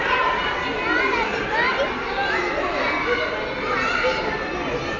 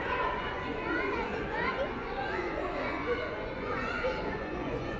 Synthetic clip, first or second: second